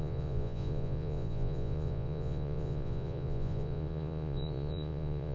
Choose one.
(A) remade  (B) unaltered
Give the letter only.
A